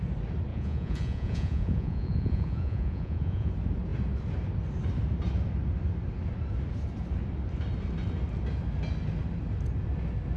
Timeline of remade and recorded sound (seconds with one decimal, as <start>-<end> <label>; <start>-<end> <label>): 0.0-0.5 recorded; 0.5-3.5 remade; 3.5-10.4 recorded